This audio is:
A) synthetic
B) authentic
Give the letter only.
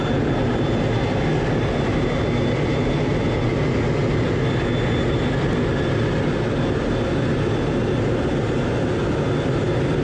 B